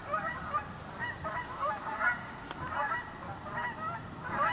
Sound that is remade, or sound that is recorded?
recorded